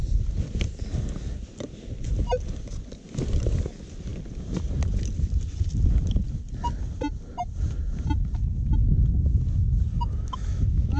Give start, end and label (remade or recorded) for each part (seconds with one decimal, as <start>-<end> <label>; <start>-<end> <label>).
0.0-9.9 recorded; 9.9-11.0 remade